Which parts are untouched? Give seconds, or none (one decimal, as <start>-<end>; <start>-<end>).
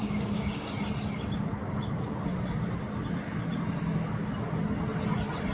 0.7-5.5